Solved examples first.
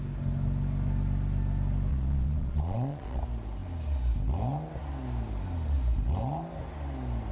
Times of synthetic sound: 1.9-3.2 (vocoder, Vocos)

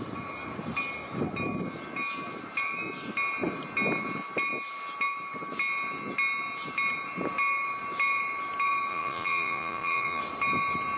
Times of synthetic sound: 8.9-10.2 (vocoder, Vocos)

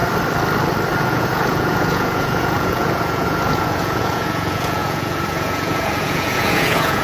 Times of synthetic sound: 1.0-7.0 (vocoder, Vocos)

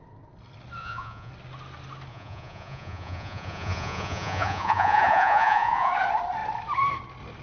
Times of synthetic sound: 0.8-1.3 (vocoder, Vocos); 2.1-5.9

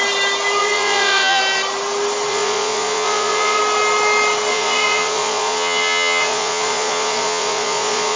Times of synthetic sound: 0.6-1.4 (vocoder, Vocos); 2.3-3.6; 4.5-8.2